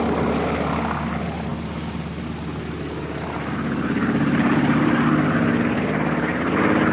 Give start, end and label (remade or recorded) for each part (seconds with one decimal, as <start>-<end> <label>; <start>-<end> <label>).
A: 0.0-6.9 recorded